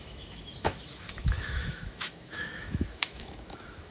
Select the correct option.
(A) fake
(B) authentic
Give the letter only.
A